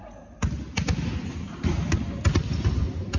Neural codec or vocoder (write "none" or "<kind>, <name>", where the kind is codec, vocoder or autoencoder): none